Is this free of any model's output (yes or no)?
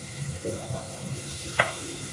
no